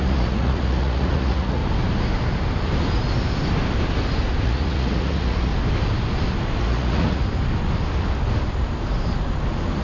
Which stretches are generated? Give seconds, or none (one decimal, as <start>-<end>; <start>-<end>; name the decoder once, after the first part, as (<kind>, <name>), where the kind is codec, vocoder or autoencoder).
0.0-1.6 (vocoder, Vocos); 4.4-5.5; 6.6-7.2